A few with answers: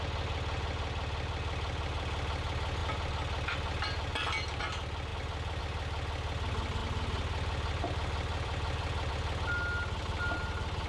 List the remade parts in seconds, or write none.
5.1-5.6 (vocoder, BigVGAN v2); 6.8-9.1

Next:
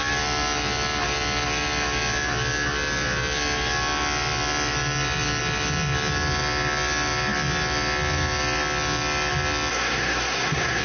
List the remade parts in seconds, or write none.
9.7-10.8 (codec, SNAC)